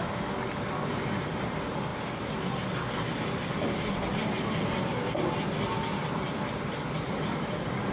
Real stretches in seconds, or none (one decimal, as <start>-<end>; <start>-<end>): 0.0-7.9